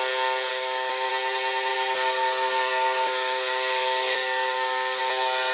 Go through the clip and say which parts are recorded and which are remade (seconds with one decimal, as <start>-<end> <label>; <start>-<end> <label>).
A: 0.0-0.5 recorded; 0.5-1.1 remade; 1.1-1.7 recorded; 1.7-5.0 remade; 5.0-5.5 recorded